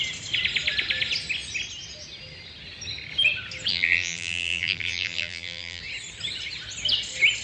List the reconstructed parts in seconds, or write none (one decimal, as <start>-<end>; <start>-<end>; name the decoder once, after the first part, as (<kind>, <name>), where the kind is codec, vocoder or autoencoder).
3.7-5.8 (vocoder, BigVGAN v2)